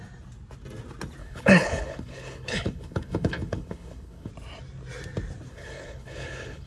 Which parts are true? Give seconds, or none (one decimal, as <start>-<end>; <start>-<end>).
0.0-1.2; 4.3-5.5